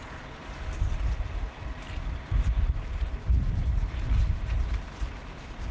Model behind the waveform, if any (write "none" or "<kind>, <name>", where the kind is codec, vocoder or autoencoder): vocoder, BigVGAN v2